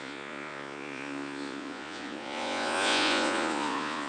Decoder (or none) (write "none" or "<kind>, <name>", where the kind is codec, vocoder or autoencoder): vocoder, Vocos